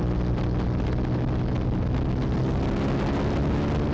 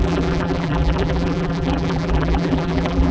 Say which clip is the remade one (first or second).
second